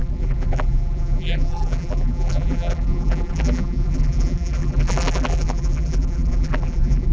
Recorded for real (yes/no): no